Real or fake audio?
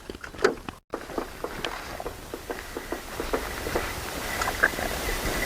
real